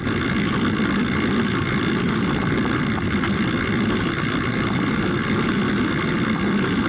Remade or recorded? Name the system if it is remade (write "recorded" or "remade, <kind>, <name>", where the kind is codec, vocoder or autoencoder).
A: recorded